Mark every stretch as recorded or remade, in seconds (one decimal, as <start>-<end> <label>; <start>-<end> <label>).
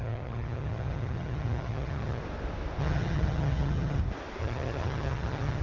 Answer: 0.0-2.2 remade; 2.2-2.8 recorded; 2.8-4.0 remade; 4.0-4.4 recorded; 4.4-5.6 remade